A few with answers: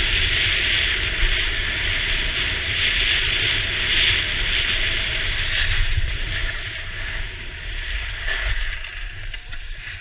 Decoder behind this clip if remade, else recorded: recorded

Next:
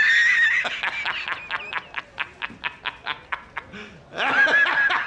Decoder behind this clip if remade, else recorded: recorded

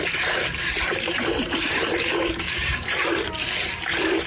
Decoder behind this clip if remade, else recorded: remade, vocoder, BigVGAN v2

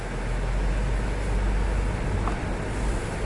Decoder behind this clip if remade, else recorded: recorded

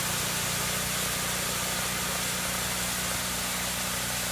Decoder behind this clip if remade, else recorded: recorded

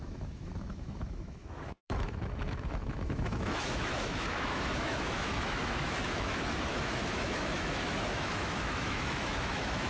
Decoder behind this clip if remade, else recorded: remade, autoencoder, DAC-VAE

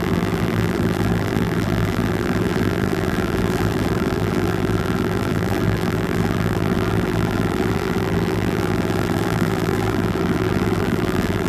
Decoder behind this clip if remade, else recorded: remade, vocoder, BigVGAN v2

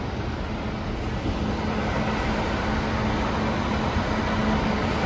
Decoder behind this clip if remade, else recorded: recorded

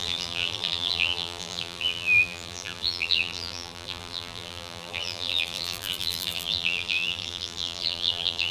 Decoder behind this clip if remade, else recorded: remade, vocoder, BigVGAN v2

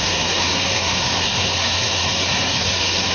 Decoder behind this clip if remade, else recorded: remade, codec, SNAC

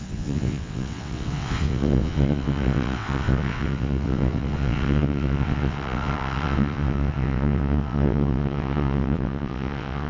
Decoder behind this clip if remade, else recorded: remade, vocoder, WaveNeXt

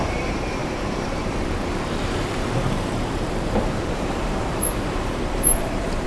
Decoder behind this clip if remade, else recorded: remade, vocoder, BigVGAN v2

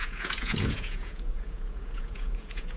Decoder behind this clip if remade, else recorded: remade, vocoder, Vocos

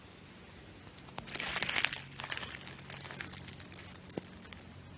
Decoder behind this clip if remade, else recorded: recorded